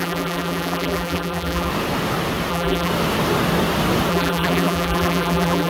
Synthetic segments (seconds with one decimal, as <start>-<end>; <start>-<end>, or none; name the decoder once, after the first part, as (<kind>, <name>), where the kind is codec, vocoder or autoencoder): 0.0-1.7 (vocoder, BigVGAN v2); 2.5-2.9; 4.1-5.7